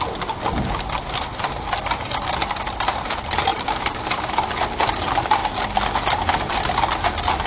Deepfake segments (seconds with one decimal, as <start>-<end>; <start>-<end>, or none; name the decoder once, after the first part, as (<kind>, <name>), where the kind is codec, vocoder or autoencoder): 3.5-4.5 (vocoder, BigVGAN v2)